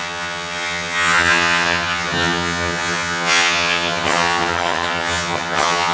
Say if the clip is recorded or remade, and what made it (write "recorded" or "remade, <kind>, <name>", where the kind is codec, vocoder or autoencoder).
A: remade, vocoder, HiFi-GAN